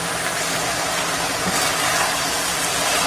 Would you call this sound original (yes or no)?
yes